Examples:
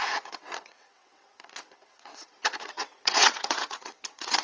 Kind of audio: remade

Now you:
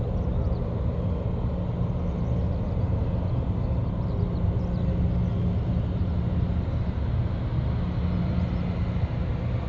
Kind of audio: recorded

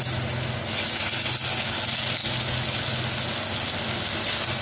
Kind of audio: recorded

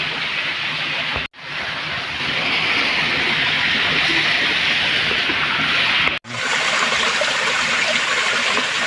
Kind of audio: recorded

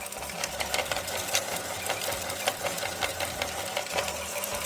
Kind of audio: recorded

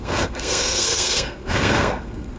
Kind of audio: remade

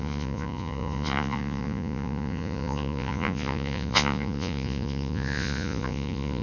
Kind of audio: remade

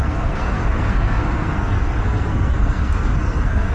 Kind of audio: remade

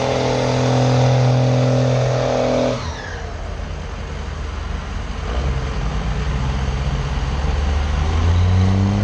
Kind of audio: recorded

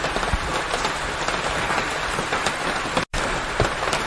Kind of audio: recorded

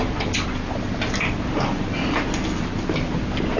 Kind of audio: recorded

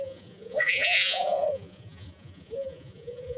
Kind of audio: remade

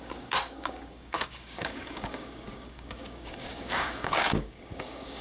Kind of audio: remade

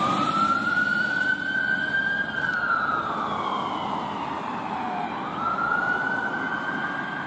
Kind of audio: recorded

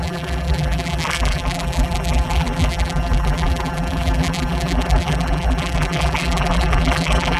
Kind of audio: remade